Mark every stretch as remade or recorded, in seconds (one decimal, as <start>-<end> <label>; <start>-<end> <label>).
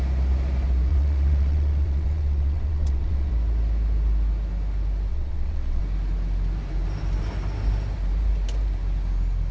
0.0-0.9 recorded; 0.9-3.3 remade; 3.3-5.1 recorded; 5.1-5.8 remade; 5.8-9.5 recorded